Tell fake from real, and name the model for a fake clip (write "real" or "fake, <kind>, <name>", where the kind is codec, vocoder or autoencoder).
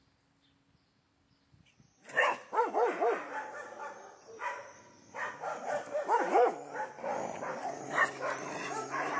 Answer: real